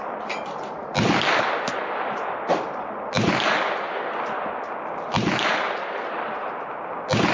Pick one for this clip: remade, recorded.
recorded